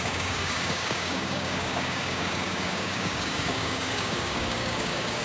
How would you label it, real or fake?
fake